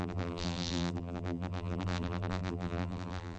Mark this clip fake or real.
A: fake